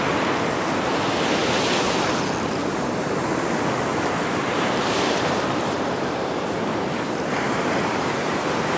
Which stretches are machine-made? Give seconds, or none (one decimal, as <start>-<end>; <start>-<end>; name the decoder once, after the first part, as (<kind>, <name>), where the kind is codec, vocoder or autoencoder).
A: 1.4-2.1 (vocoder, BigVGAN v2); 2.6-3.3; 3.9-8.8